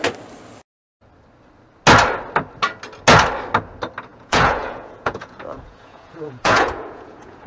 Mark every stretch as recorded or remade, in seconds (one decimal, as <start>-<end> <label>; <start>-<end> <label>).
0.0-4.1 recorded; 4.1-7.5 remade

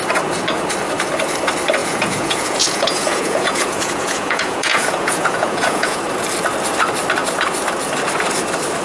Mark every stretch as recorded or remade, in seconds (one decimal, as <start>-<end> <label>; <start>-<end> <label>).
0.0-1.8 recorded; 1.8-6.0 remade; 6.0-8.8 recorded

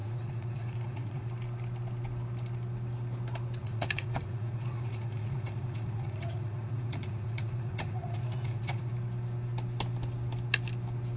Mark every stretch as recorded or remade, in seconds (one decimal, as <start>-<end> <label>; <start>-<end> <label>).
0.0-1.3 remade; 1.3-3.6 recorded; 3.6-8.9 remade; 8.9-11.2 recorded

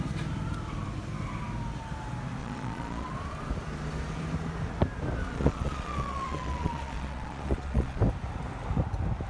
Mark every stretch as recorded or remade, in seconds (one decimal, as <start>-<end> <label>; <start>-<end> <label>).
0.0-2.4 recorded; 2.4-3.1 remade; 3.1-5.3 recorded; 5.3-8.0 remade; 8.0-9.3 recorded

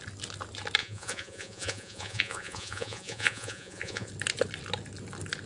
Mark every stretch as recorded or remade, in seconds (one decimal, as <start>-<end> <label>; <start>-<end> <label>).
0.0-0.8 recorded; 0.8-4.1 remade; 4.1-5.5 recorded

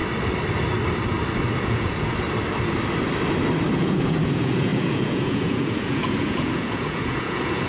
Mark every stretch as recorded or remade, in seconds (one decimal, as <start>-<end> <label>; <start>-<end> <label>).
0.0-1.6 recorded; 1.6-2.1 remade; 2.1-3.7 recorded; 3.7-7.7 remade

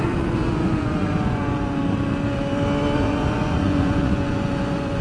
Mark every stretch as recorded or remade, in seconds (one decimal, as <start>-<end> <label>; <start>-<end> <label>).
0.0-1.8 remade; 1.8-3.0 recorded; 3.0-5.0 remade

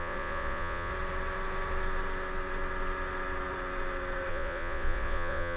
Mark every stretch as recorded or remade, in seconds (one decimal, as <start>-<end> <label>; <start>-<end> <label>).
0.0-0.9 remade; 0.9-4.3 recorded; 4.3-5.6 remade